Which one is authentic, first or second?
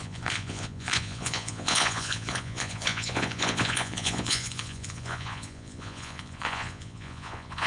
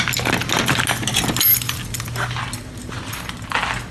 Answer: second